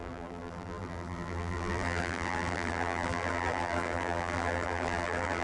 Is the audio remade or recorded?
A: remade